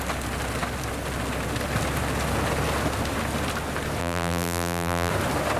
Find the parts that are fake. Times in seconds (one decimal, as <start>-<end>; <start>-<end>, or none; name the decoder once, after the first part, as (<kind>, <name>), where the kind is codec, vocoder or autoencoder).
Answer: 4.0-5.1 (vocoder, BigVGAN v2)